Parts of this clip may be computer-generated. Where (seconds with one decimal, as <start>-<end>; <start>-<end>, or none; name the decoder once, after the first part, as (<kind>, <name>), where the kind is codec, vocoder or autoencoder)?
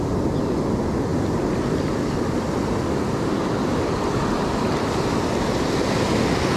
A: none